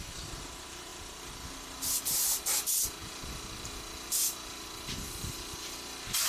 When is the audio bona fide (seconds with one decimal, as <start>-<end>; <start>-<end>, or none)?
none